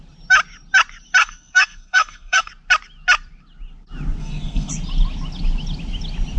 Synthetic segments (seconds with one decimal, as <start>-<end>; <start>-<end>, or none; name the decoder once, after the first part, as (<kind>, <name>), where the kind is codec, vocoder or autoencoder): 1.2-2.5 (codec, SNAC); 4.2-4.7